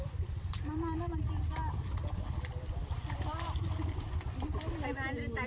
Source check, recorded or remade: recorded